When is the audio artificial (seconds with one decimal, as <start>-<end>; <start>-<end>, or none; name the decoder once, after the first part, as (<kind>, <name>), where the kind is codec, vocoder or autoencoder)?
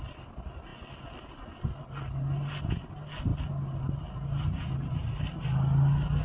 none